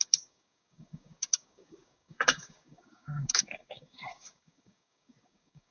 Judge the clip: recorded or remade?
remade